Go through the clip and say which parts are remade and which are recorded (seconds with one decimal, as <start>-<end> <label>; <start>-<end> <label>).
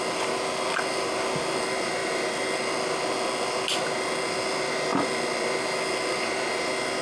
0.0-2.0 recorded; 2.0-2.6 remade; 2.6-4.9 recorded; 4.9-5.9 remade; 5.9-7.0 recorded